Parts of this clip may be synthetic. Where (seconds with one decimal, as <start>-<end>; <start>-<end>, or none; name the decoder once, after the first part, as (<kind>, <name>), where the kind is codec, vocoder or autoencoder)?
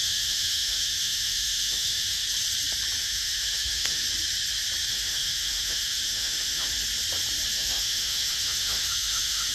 0.0-2.2 (autoencoder, DAC-VAE); 3.0-4.0; 4.9-6.7; 7.5-9.5